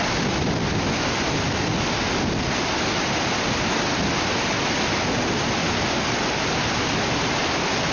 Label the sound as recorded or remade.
recorded